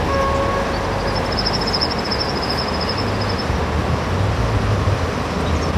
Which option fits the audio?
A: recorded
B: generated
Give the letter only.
A